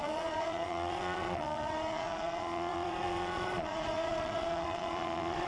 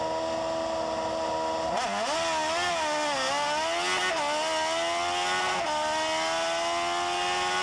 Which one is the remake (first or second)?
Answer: first